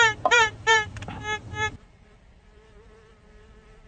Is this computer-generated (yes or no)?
yes